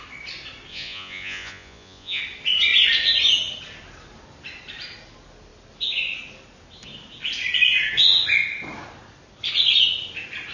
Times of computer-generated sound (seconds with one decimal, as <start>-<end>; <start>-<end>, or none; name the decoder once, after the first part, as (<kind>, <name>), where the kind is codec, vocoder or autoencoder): 0.7-2.2 (vocoder, Vocos)